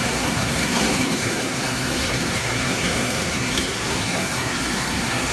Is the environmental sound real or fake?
fake